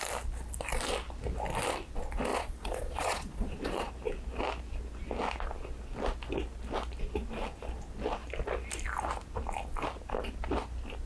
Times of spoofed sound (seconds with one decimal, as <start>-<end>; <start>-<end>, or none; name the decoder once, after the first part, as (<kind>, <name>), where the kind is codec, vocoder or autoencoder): 2.3-3.9 (vocoder, Vocos)